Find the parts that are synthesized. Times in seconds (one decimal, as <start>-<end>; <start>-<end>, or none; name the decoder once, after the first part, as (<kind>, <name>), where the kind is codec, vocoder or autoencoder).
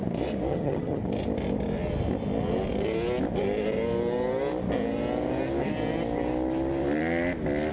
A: 0.5-1.0 (vocoder, HiFi-GAN)